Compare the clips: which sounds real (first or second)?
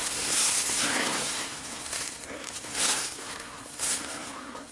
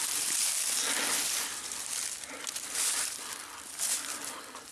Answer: second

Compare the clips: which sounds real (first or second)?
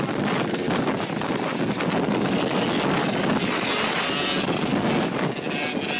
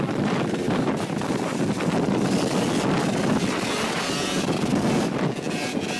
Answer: first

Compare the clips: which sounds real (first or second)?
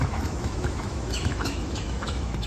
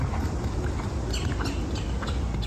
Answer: second